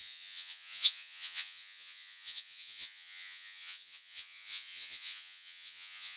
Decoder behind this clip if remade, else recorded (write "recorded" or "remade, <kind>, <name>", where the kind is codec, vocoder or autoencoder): remade, vocoder, Vocos